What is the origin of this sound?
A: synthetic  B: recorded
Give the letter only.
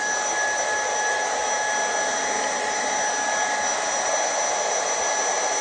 B